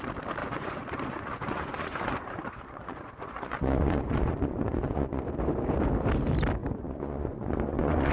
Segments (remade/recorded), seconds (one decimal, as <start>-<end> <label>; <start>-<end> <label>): 0.0-0.4 recorded; 0.4-5.2 remade; 5.2-6.6 recorded; 6.6-8.1 remade